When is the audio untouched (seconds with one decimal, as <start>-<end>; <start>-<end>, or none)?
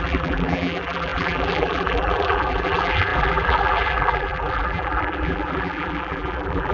none